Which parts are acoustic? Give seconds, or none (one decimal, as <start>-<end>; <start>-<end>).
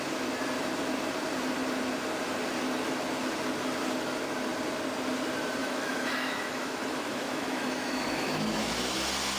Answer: 0.0-5.6; 8.7-9.4